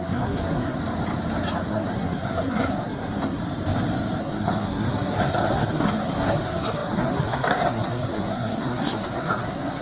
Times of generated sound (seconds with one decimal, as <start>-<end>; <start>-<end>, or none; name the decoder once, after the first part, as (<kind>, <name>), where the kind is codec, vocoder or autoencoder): 0.0-0.8 (codec, SNAC); 1.7-3.4; 4.2-9.8